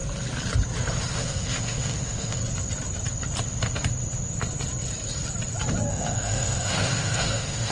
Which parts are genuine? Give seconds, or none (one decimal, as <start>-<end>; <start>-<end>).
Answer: 0.0-1.1; 2.4-5.9